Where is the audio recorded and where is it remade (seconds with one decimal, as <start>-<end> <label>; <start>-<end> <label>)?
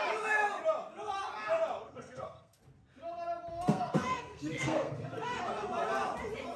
0.0-1.8 recorded; 1.8-2.6 remade; 2.6-3.5 recorded; 3.5-5.4 remade; 5.4-6.6 recorded